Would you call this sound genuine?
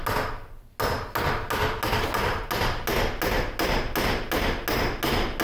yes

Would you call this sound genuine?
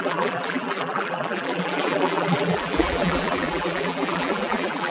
no